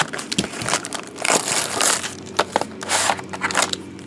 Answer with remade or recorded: recorded